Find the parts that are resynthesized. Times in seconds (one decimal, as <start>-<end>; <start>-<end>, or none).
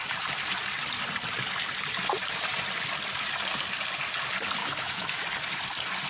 4.6-5.2